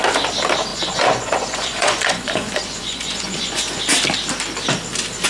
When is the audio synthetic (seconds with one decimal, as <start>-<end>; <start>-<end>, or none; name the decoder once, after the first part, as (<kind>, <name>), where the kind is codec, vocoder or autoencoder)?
0.7-3.8 (vocoder, Vocos)